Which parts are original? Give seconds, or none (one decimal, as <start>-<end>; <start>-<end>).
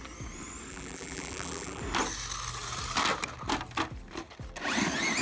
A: 0.0-0.7; 1.8-5.2